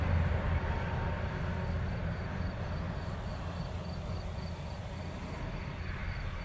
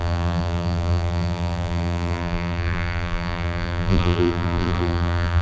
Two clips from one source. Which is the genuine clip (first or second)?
first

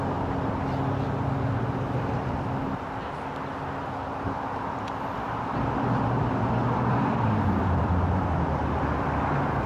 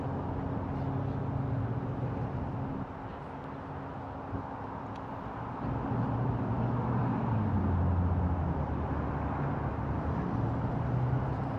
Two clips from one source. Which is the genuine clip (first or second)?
second